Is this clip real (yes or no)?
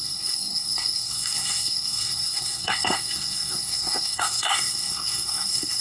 no